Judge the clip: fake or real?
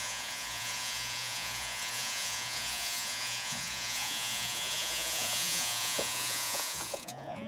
fake